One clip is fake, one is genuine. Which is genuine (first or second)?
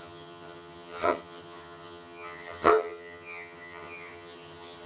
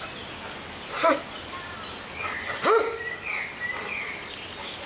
second